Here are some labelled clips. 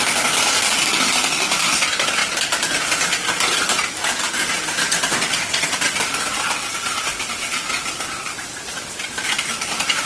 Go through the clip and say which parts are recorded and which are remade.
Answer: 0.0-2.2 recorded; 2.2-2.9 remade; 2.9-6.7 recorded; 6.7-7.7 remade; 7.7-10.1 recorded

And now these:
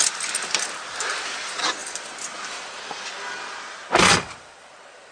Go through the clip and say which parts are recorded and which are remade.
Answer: 0.0-5.1 recorded